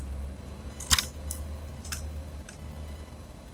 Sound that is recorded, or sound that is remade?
recorded